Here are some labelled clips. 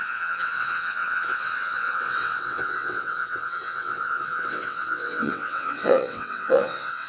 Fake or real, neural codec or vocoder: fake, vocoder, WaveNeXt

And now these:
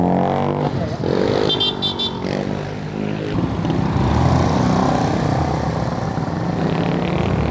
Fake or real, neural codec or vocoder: real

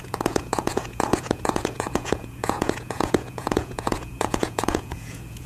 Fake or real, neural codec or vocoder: fake, vocoder, Vocos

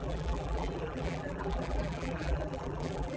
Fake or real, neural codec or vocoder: fake, vocoder, BigVGAN v2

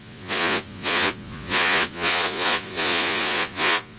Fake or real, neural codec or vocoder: fake, vocoder, Vocos